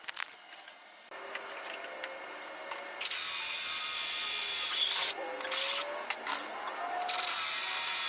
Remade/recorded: recorded